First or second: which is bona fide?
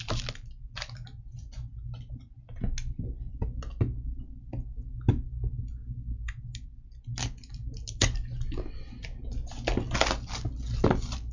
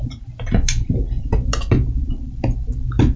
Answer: first